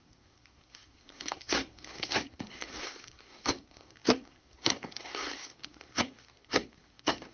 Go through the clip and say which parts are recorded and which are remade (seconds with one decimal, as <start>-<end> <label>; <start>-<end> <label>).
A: 0.0-7.3 remade